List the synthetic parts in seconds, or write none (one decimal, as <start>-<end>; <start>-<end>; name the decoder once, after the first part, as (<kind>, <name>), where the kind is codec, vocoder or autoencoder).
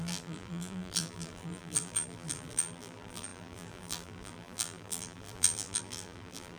0.0-6.6 (vocoder, BigVGAN v2)